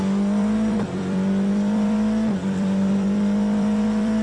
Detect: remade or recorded remade